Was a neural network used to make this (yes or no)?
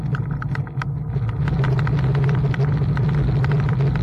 no